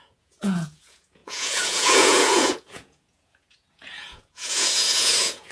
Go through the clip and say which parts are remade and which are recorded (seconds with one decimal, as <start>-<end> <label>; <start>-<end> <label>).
0.0-5.5 remade

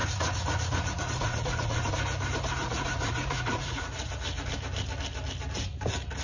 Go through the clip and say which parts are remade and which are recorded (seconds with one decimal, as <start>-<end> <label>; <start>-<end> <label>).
0.0-1.9 remade; 1.9-2.6 recorded; 2.6-4.5 remade; 4.5-6.2 recorded

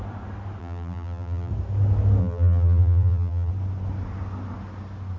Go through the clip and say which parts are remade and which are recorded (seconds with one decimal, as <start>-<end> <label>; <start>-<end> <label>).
0.0-0.6 recorded; 0.6-1.5 remade; 1.5-2.2 recorded; 2.2-3.5 remade; 3.5-5.2 recorded

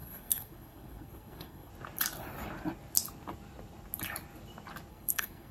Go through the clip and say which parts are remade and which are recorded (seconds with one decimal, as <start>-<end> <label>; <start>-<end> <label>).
0.0-1.7 remade; 1.7-4.9 recorded; 4.9-5.5 remade

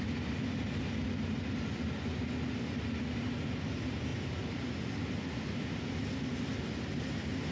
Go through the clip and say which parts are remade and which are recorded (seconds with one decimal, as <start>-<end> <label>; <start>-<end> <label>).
0.0-7.5 recorded